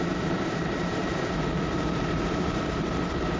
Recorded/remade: remade